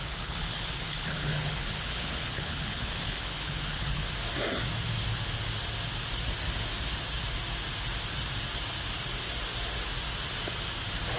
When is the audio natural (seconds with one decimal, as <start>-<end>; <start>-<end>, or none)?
4.1-11.2